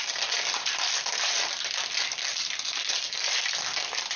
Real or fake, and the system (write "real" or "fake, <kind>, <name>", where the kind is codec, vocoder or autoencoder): fake, vocoder, BigVGAN v2